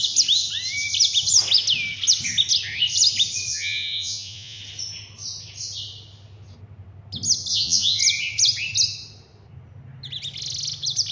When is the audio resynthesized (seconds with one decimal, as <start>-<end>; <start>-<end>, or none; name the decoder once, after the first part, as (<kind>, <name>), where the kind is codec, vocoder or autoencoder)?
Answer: 3.5-4.6 (vocoder, Vocos); 7.5-8.0